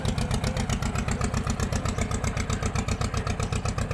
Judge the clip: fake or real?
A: real